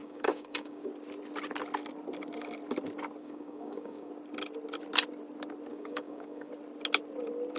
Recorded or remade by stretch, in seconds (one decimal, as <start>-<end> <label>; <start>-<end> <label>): 0.0-0.9 remade; 0.9-3.2 recorded; 3.2-4.1 remade; 4.1-5.7 recorded; 5.7-6.5 remade; 6.5-7.6 recorded